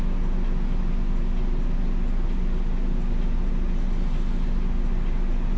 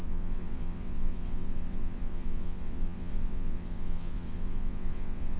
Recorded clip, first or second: first